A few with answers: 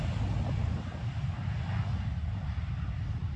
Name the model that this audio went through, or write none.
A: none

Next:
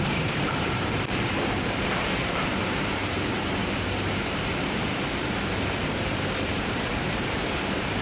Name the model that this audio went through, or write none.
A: vocoder, BigVGAN v2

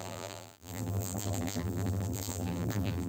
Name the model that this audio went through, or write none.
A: vocoder, BigVGAN v2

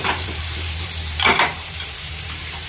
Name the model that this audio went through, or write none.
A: vocoder, BigVGAN v2